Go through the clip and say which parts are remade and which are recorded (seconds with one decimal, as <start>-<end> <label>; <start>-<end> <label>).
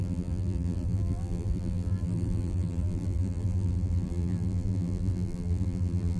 0.0-6.2 remade